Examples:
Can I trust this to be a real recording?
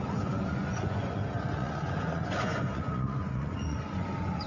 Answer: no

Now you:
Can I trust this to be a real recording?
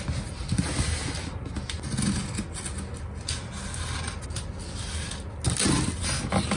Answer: yes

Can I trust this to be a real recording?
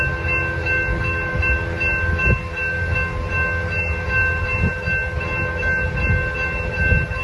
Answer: yes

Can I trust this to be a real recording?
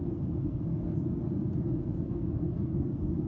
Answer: no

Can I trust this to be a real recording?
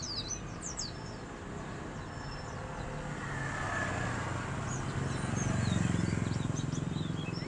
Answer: yes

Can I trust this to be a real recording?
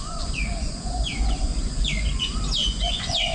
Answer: no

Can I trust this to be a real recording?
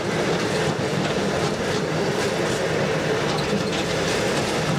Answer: yes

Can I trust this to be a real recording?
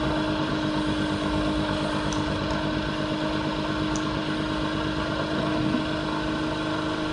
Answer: yes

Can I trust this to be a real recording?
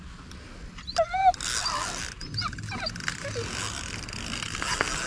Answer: yes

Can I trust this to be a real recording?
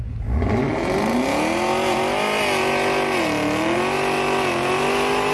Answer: yes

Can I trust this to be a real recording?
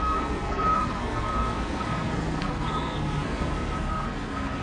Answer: no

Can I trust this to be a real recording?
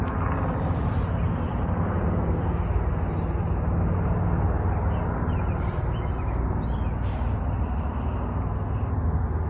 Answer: yes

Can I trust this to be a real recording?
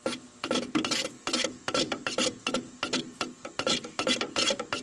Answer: yes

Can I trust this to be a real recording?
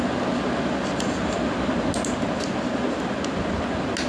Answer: yes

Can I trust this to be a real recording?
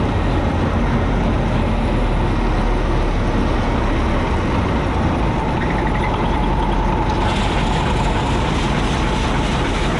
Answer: yes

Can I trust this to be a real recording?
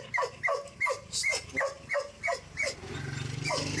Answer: yes